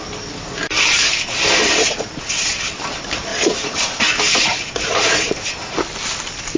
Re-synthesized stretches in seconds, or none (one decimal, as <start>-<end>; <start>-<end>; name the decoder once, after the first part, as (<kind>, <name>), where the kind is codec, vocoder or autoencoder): 1.6-2.1 (vocoder, Vocos); 3.3-4.0